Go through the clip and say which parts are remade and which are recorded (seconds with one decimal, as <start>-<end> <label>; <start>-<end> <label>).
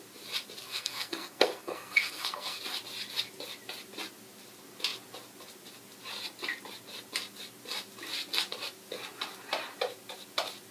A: 0.0-0.6 recorded; 0.6-2.6 remade; 2.6-10.7 recorded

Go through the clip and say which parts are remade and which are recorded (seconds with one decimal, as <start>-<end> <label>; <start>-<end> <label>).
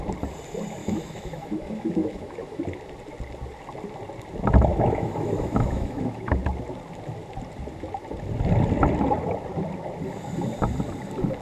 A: 0.0-0.8 recorded; 0.8-2.6 remade; 2.6-4.7 recorded; 4.7-6.4 remade; 6.4-11.4 recorded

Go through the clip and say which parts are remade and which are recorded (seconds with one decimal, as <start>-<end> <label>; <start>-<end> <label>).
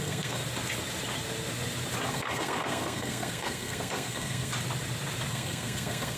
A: 0.0-0.4 remade; 0.4-2.1 recorded; 2.1-4.5 remade; 4.5-5.3 recorded; 5.3-6.2 remade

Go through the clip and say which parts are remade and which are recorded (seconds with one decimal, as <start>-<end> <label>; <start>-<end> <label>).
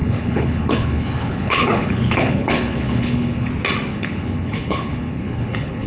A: 0.0-3.5 remade; 3.5-3.9 recorded; 3.9-5.9 remade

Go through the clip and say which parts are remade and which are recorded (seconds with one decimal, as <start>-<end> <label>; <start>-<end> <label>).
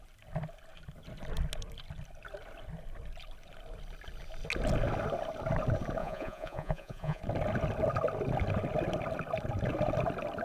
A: 0.0-6.0 recorded; 6.0-7.2 remade; 7.2-10.4 recorded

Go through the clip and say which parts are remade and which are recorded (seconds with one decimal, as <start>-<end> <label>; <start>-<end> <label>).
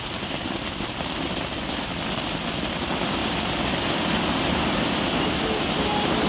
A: 0.0-6.3 recorded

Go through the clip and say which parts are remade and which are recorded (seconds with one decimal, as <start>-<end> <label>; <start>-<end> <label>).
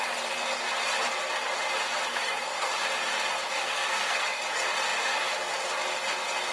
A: 0.0-2.1 recorded; 2.1-2.7 remade; 2.7-3.6 recorded; 3.6-4.4 remade; 4.4-6.5 recorded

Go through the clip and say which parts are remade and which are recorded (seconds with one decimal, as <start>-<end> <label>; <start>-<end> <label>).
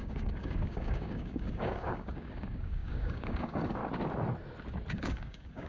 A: 0.0-3.8 remade; 3.8-4.9 recorded; 4.9-5.7 remade